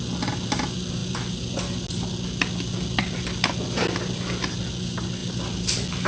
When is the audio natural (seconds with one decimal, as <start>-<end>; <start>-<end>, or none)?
0.0-6.1